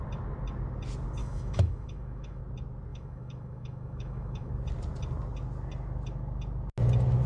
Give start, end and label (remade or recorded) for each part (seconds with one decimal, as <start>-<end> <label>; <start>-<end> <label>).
0.0-1.2 recorded; 1.2-2.4 remade; 2.4-2.9 recorded; 2.9-4.5 remade; 4.5-7.3 recorded